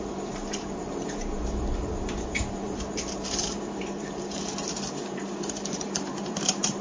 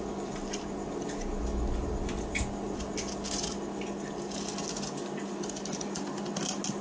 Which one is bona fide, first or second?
second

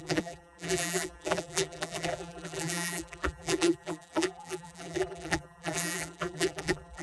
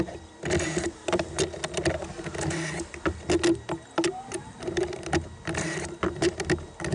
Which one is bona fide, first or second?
second